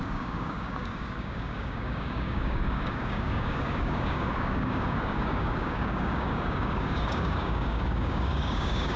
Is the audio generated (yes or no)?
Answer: yes